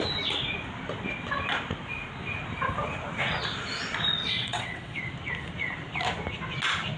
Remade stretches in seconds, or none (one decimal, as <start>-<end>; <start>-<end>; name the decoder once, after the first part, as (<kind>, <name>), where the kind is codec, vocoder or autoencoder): 4.2-5.0 (vocoder, WaveNeXt)